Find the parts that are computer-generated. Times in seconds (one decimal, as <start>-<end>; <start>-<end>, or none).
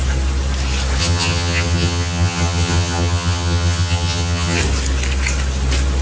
1.0-4.6